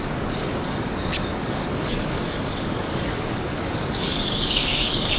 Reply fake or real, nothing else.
fake